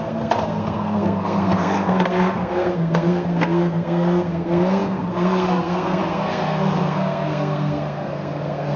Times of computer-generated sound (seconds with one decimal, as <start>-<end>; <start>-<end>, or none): 0.0-8.8